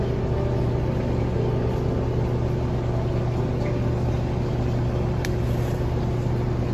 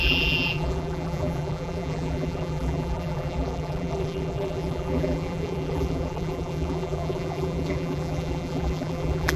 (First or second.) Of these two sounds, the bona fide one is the first